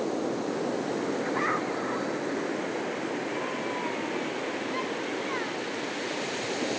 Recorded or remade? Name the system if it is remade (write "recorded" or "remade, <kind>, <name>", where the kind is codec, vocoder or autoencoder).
recorded